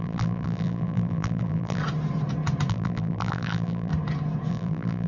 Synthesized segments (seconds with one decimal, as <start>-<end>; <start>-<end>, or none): 0.0-1.8; 2.7-3.9; 4.5-5.1